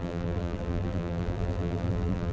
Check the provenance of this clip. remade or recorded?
remade